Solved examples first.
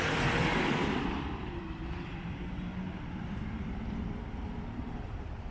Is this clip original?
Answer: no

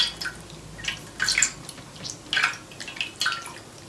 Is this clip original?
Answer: yes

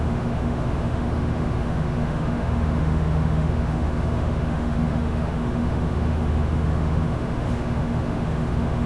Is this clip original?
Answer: no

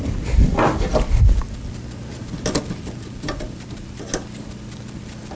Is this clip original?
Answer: yes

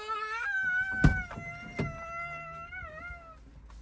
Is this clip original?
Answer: yes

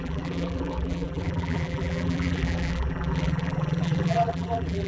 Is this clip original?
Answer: no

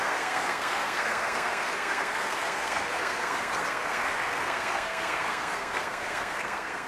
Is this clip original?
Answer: no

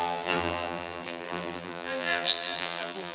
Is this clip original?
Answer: no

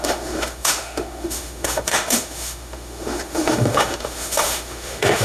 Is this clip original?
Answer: no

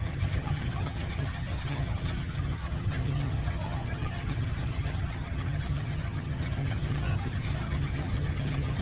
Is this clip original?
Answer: no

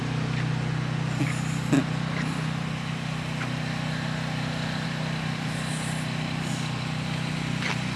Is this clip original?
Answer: yes